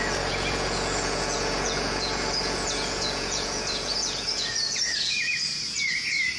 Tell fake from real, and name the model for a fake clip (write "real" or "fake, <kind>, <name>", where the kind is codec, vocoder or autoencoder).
fake, vocoder, Vocos